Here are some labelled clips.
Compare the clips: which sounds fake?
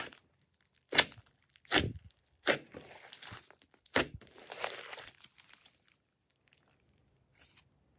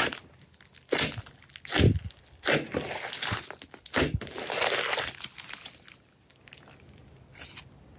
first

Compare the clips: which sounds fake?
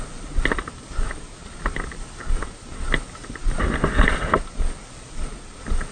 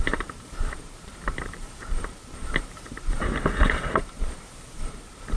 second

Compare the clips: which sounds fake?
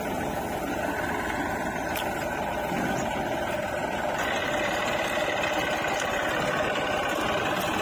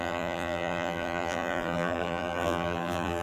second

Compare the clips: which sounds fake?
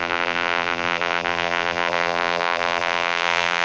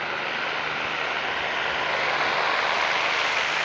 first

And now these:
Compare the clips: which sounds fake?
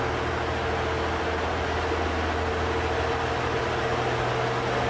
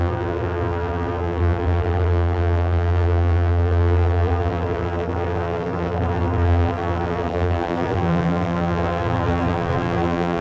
second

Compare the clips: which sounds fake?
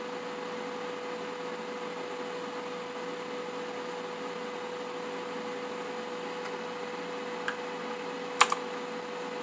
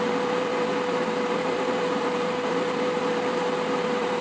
second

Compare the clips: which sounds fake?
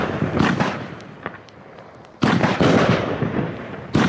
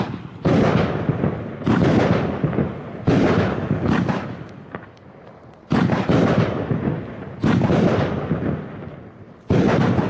first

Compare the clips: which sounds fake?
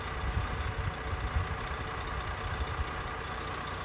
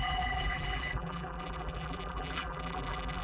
second